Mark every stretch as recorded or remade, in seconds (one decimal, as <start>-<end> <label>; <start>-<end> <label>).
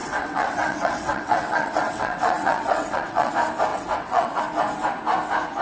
0.0-3.3 remade; 3.3-3.7 recorded; 3.7-4.4 remade; 4.4-5.6 recorded